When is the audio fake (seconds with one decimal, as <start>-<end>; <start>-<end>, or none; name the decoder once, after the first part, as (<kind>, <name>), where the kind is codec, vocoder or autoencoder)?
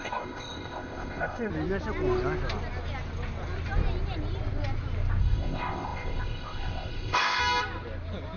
0.0-1.5 (codec, ZipCodec); 5.2-7.4